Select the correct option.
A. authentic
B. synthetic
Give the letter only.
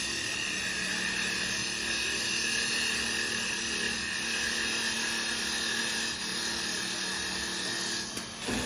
A